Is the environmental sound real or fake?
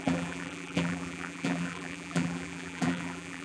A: fake